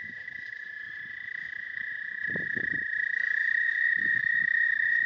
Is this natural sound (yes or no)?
no